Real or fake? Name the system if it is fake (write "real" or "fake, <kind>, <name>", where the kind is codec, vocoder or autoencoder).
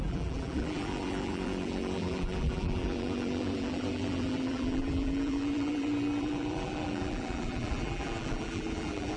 fake, vocoder, BigVGAN v2